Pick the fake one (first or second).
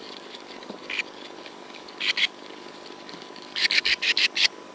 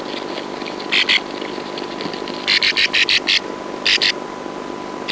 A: first